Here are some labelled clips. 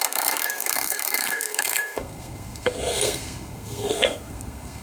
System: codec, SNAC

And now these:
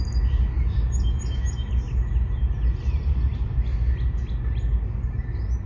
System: none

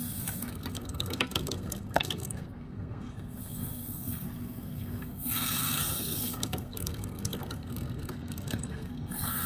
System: codec, SNAC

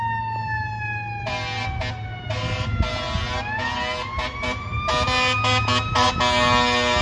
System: none